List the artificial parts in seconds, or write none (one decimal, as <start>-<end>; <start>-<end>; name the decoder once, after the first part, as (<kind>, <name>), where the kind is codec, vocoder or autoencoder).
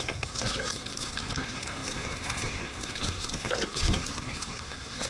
0.0-5.1 (codec, SNAC)